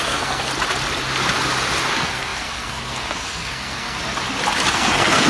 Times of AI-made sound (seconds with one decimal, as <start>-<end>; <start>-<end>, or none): 0.0-0.5; 1.9-4.0; 4.7-5.3